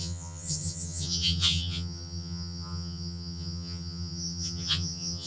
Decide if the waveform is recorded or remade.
remade